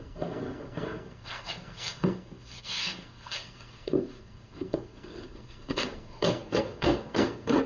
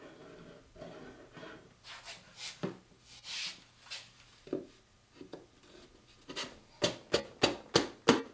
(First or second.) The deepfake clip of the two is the first